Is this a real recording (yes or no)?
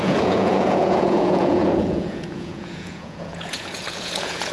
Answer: no